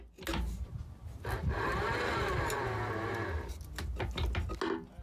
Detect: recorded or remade recorded